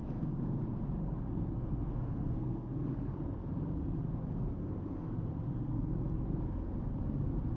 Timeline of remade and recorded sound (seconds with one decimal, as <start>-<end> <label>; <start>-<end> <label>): 0.0-0.6 remade; 0.6-1.6 recorded; 1.6-3.2 remade; 3.2-4.6 recorded; 4.6-6.1 remade; 6.1-7.6 recorded